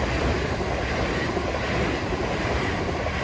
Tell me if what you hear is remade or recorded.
recorded